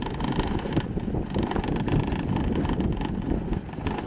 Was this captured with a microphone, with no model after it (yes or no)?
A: yes